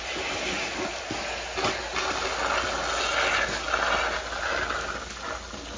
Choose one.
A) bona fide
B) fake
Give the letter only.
A